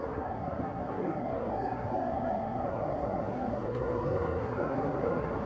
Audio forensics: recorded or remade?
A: remade